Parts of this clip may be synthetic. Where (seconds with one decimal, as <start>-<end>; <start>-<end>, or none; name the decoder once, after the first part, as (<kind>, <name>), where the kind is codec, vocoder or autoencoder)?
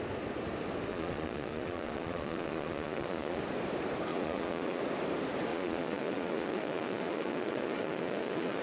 0.9-3.4 (vocoder, Vocos); 4.1-4.8; 5.5-8.6